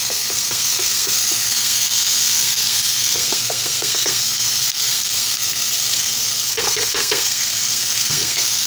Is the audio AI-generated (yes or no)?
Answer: yes